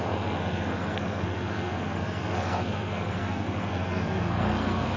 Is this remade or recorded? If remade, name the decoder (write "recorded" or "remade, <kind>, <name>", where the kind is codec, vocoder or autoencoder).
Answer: remade, codec, SNAC